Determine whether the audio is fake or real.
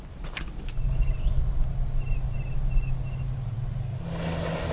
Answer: real